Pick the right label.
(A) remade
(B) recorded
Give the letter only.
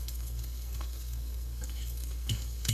A